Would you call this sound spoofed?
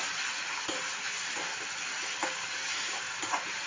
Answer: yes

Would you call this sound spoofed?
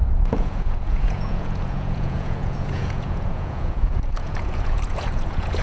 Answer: yes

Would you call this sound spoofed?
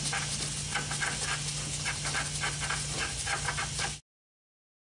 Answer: no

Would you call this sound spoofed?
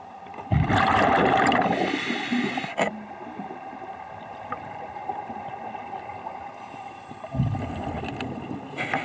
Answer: no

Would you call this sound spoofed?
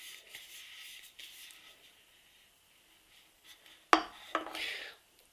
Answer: no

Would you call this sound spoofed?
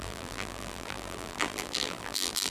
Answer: yes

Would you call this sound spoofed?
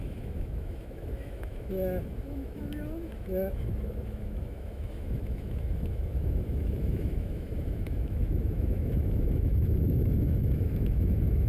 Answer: yes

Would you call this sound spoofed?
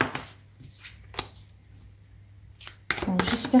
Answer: no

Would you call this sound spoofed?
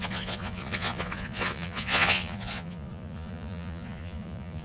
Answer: yes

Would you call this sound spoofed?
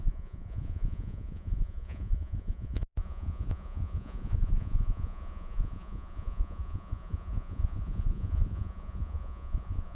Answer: yes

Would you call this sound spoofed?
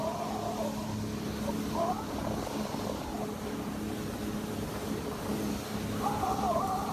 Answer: no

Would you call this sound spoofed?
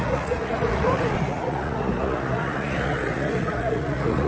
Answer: yes